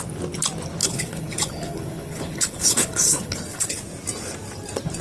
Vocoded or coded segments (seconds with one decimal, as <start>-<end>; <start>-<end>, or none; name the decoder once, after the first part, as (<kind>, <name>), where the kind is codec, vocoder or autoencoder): 0.8-3.8 (codec, HILCodec)